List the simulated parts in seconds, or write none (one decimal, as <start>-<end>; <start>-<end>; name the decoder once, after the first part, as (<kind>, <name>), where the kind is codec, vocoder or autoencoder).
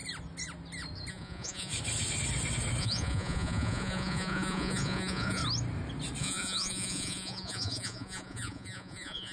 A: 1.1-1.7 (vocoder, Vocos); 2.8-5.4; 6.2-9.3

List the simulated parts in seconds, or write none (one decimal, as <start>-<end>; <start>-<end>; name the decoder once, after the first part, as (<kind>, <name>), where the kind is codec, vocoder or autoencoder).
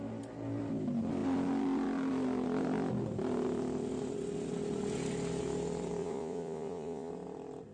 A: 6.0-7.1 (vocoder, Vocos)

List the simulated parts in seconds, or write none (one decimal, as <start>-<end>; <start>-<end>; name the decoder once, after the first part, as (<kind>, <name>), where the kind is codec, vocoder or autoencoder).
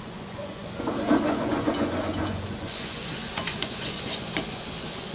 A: 0.0-5.1 (vocoder, Vocos)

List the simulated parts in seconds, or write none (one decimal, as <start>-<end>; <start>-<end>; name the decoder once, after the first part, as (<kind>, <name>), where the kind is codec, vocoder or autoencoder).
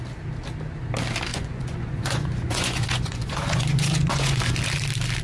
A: 1.3-4.4 (vocoder, Vocos)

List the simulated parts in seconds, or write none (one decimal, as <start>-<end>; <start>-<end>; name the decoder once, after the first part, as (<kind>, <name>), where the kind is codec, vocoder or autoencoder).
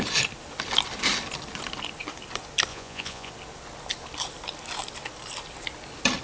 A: 2.7-3.3 (vocoder, Vocos)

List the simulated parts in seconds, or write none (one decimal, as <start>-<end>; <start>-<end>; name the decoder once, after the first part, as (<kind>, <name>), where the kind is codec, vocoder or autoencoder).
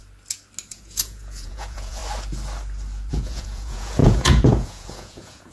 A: 0.7-2.0 (vocoder, Vocos); 3.1-5.5